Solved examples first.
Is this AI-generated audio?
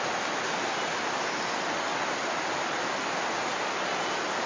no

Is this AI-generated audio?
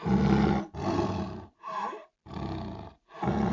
no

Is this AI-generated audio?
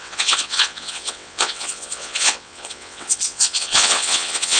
yes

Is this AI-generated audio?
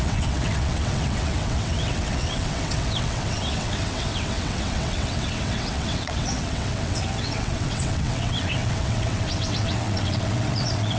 yes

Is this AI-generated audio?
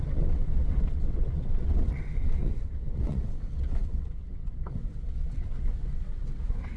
yes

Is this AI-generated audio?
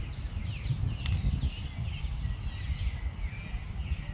no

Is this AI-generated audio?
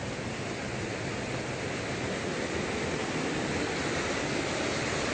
no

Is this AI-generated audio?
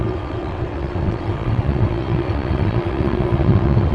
yes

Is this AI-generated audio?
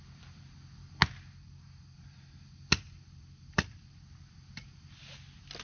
no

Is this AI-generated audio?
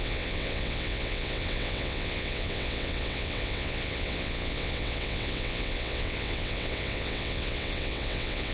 yes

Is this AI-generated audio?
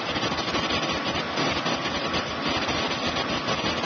no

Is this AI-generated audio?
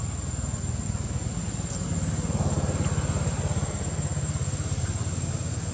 no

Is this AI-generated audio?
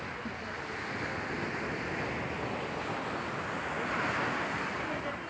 no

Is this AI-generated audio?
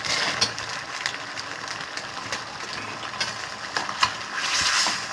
no